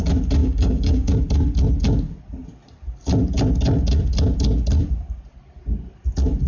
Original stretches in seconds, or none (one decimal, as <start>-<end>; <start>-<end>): 0.0-0.4; 1.1-6.5

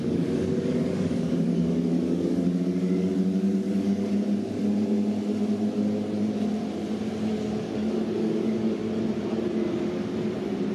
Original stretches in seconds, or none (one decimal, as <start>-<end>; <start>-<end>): 4.1-7.3; 8.8-10.7

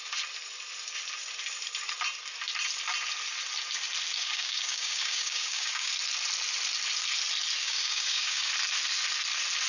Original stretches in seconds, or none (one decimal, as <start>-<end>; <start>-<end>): 0.0-4.2; 5.9-7.6; 8.5-9.7

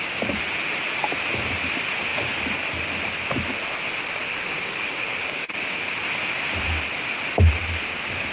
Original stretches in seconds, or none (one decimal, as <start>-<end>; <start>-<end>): 0.0-4.3; 5.5-8.3

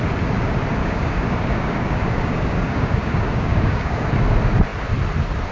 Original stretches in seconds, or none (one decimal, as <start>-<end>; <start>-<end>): 0.0-0.8; 4.1-5.5